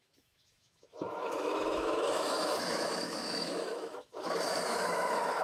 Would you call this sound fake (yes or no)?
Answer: yes